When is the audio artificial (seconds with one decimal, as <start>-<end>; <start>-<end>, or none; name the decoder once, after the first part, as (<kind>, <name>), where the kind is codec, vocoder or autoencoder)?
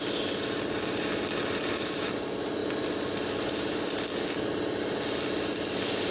none